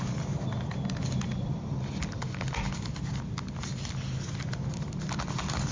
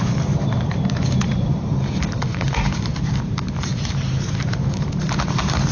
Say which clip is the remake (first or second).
second